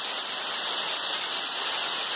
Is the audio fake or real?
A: real